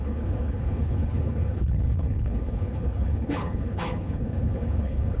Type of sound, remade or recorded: remade